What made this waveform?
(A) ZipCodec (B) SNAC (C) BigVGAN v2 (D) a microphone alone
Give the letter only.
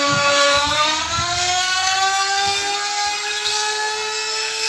B